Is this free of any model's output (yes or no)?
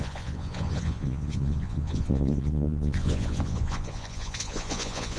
no